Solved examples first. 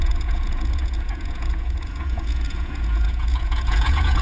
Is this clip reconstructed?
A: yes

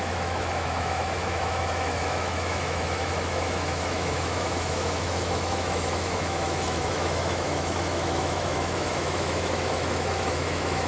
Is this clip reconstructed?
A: yes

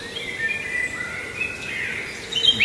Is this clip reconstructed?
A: no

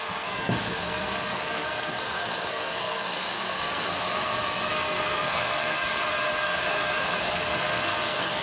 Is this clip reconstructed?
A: yes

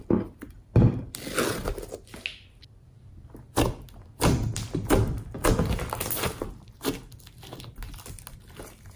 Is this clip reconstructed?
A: no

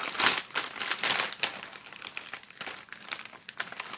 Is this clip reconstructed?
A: no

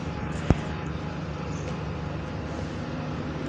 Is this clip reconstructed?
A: no